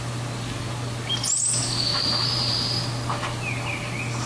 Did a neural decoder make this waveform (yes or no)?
no